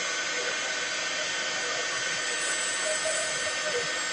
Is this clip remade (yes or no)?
no